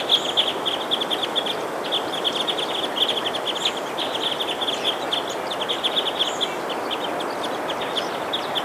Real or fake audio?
real